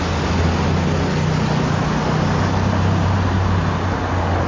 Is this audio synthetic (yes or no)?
no